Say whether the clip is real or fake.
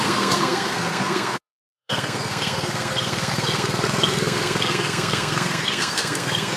fake